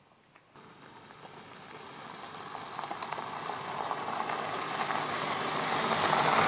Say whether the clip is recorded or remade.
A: recorded